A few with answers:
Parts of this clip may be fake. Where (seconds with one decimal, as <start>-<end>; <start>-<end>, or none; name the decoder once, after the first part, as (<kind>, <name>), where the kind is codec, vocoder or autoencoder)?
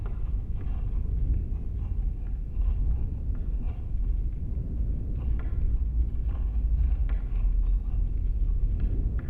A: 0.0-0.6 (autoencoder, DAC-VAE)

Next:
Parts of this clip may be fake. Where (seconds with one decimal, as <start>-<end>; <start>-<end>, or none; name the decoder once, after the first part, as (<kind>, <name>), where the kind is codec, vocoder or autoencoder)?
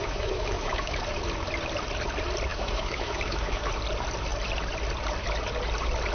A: 0.0-1.0 (autoencoder, DAC-VAE); 2.5-3.7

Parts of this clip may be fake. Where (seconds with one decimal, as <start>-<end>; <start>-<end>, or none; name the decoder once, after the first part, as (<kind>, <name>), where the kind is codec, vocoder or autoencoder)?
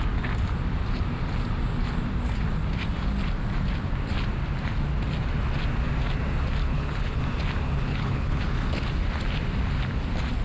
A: 6.6-7.2 (codec, HILCodec); 7.9-8.4